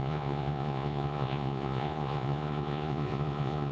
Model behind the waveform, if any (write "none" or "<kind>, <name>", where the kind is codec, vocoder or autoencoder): vocoder, Vocos